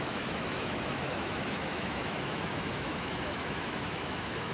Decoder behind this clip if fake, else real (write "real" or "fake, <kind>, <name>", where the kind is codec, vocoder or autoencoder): fake, autoencoder, DAC-VAE